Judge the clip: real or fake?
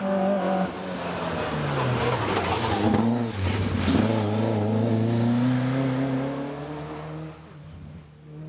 real